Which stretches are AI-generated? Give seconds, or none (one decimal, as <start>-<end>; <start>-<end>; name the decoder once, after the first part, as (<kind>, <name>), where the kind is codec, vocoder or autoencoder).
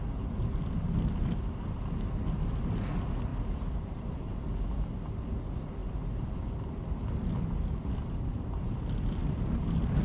3.3-4.3 (vocoder, BigVGAN v2); 5.8-6.5